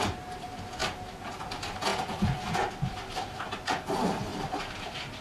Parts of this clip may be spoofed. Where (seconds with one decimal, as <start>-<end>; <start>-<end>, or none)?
1.9-2.7; 4.3-5.2